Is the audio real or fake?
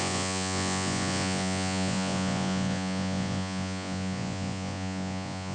fake